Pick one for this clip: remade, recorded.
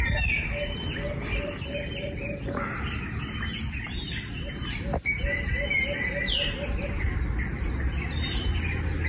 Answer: recorded